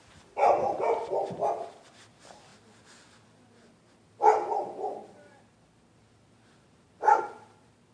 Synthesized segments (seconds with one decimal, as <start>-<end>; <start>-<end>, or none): none